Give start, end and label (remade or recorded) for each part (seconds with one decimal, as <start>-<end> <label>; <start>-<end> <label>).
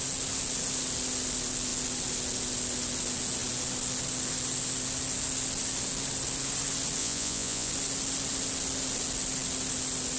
0.0-7.0 recorded; 7.0-7.7 remade; 7.7-10.2 recorded